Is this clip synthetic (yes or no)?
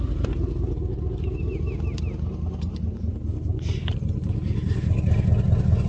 no